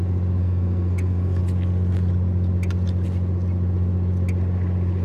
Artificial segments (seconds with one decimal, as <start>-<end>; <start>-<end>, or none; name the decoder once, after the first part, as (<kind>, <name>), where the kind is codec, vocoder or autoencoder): 0.4-1.4 (codec, SNAC)